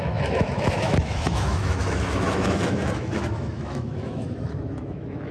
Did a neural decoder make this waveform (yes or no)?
yes